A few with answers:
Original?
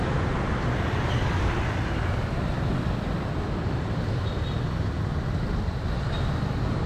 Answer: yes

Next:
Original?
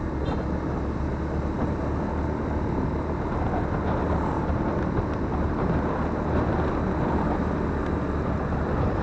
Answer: yes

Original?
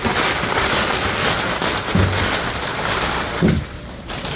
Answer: yes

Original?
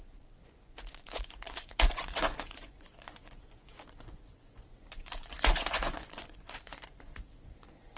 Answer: no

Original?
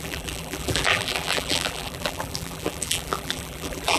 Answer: no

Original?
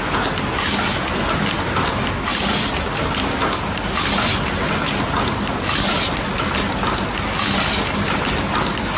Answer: yes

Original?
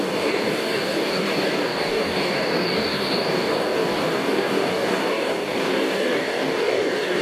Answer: no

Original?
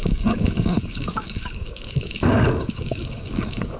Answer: no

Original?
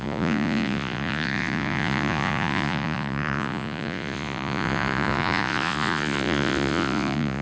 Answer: no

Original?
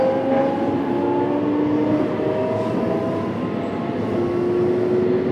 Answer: yes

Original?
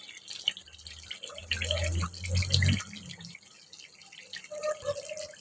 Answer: yes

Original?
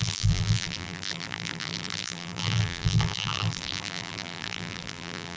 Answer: no